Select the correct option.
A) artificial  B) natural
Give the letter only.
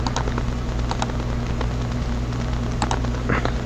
B